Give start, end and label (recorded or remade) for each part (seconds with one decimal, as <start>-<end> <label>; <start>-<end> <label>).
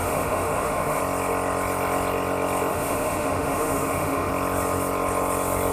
0.0-1.0 remade; 1.0-2.7 recorded; 2.7-4.3 remade; 4.3-5.7 recorded